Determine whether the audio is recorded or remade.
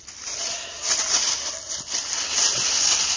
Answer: recorded